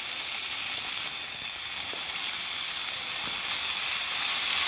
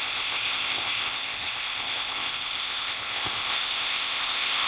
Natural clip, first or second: first